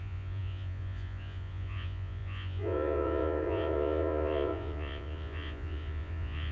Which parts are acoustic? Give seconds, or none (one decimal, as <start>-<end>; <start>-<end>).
none